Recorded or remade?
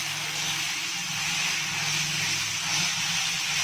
recorded